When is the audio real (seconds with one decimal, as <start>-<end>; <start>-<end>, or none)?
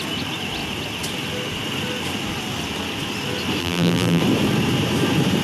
0.0-3.6; 4.2-5.4